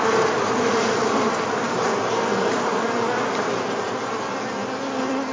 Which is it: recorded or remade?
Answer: recorded